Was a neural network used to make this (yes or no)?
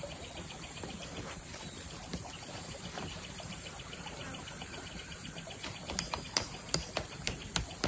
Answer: yes